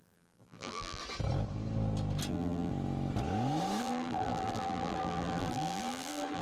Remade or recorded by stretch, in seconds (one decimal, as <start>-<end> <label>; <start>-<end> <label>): 0.0-1.0 remade; 1.0-2.3 recorded; 2.3-2.7 remade; 2.7-3.8 recorded; 3.8-6.4 remade